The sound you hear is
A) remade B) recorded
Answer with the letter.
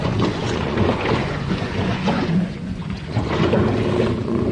A